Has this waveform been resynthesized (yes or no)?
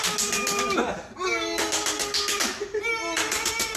no